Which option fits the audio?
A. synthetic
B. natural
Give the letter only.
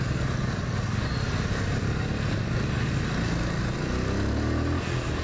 B